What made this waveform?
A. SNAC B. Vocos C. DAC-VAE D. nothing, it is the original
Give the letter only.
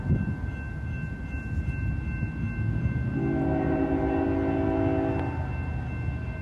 D